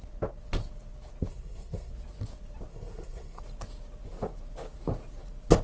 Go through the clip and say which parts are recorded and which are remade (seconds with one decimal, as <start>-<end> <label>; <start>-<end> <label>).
0.0-1.3 recorded; 1.3-1.9 remade; 1.9-2.7 recorded; 2.7-3.4 remade; 3.4-5.6 recorded